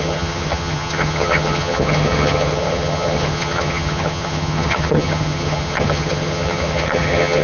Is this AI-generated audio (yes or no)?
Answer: yes